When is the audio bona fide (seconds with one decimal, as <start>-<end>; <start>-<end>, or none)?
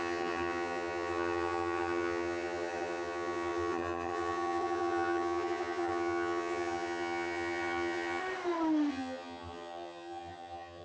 8.2-8.9